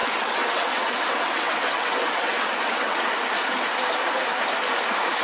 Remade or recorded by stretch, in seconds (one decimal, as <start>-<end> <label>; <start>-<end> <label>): 0.0-3.1 remade; 3.1-5.2 recorded